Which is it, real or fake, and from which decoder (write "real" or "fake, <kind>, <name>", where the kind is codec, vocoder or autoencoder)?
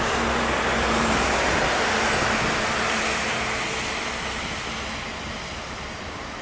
real